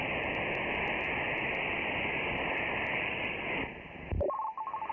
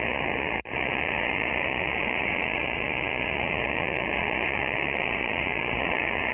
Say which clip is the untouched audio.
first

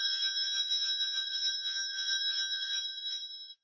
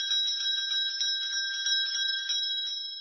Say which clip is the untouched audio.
second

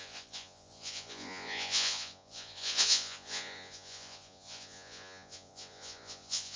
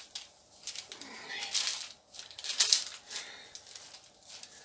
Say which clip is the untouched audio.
second